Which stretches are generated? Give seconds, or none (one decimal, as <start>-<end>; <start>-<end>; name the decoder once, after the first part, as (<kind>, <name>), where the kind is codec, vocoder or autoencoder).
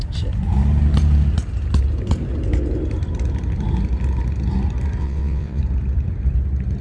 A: 5.0-5.6 (vocoder, WaveNeXt)